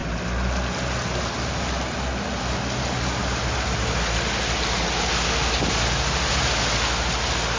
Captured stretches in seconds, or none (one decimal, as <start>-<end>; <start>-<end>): 0.0-7.6